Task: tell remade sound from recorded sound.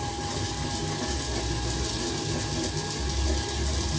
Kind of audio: recorded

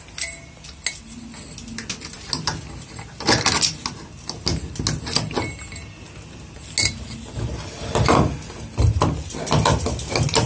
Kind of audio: recorded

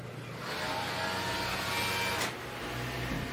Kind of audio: recorded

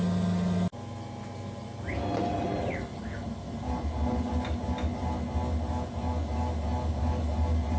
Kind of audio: recorded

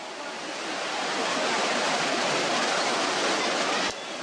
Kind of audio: recorded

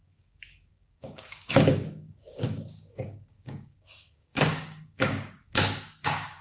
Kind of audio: remade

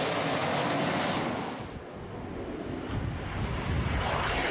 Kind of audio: recorded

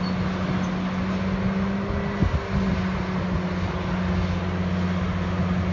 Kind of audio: recorded